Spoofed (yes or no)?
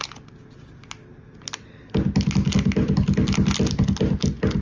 no